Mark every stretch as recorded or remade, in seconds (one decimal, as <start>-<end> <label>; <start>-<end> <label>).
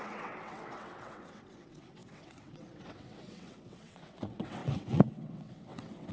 0.0-6.1 remade